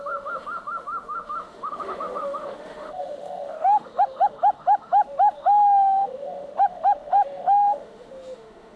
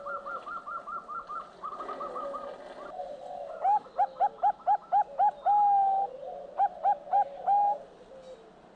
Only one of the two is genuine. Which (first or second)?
second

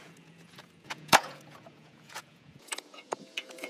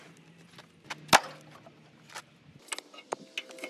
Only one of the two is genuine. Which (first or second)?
second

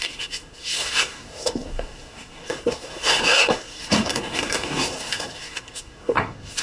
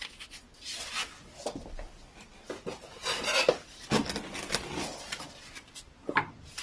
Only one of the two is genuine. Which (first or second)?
second